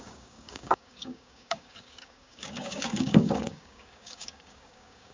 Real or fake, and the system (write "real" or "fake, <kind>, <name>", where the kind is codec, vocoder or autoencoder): fake, codec, DAC